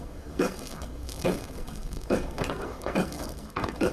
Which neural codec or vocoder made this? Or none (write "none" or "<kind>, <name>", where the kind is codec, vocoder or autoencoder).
codec, SNAC